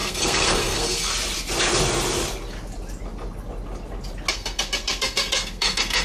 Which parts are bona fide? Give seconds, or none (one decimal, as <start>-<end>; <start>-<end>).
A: 1.1-4.3